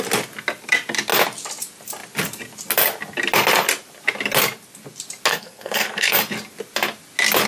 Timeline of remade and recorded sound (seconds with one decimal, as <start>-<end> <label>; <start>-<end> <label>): 0.0-5.3 recorded; 5.3-6.2 remade; 6.2-7.5 recorded